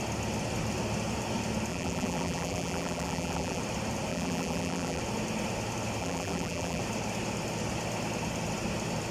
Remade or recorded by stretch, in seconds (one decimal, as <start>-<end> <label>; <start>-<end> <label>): 0.0-1.7 recorded; 1.7-3.6 remade; 3.6-4.1 recorded; 4.1-5.0 remade; 5.0-6.0 recorded; 6.0-6.8 remade; 6.8-9.1 recorded